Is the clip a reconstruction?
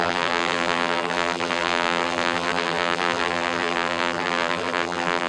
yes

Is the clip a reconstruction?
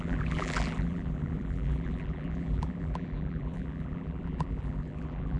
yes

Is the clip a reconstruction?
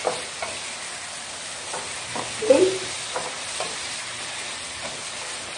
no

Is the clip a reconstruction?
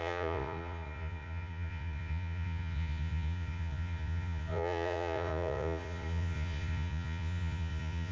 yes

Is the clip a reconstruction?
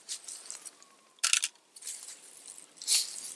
no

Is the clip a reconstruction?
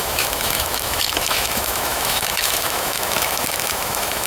yes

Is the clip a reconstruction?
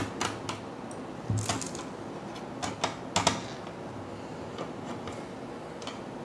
no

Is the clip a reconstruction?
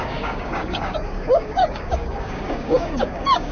yes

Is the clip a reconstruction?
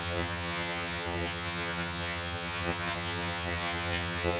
yes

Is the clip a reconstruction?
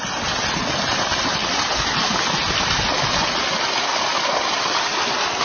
no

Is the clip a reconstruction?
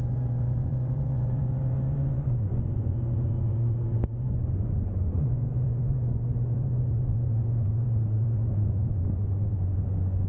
yes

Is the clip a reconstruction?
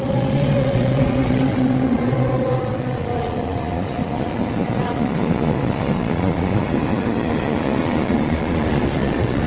yes